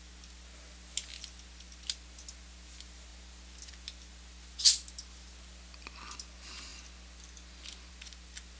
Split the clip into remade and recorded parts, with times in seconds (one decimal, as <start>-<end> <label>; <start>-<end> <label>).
0.0-8.6 recorded